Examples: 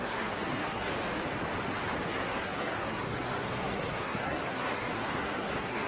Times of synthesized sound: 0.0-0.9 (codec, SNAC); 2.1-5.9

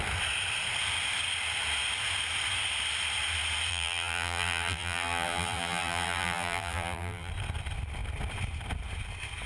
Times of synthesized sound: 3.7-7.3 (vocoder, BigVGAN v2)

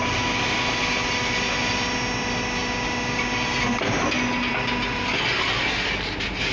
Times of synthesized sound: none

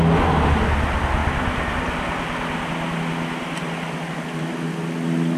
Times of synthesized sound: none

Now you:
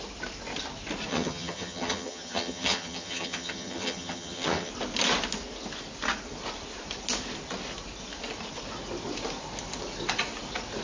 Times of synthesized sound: 1.1-4.7 (vocoder, HiFi-GAN)